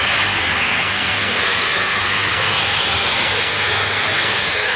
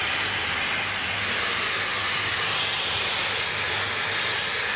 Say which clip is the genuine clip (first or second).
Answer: second